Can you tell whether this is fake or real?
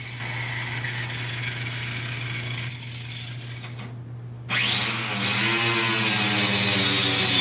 real